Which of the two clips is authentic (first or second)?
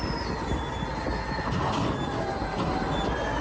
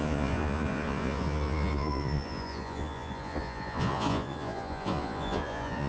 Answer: first